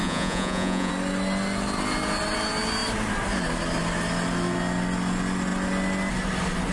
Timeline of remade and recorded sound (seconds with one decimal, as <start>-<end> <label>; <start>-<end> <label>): 0.0-0.9 remade; 0.9-6.7 recorded